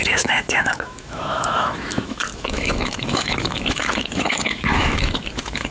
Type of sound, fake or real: fake